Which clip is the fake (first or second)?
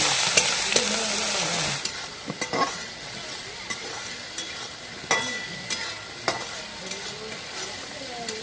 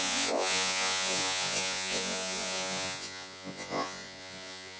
second